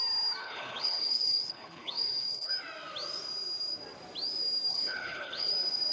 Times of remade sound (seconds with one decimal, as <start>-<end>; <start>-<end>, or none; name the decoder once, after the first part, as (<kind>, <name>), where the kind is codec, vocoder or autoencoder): 0.4-2.5 (codec, HILCodec); 4.7-5.5